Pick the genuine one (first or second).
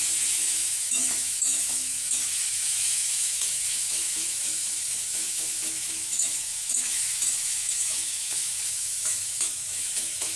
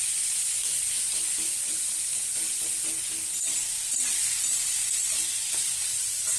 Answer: second